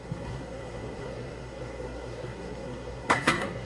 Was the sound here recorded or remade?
remade